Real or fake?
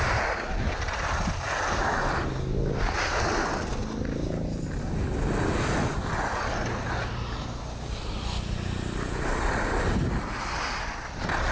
real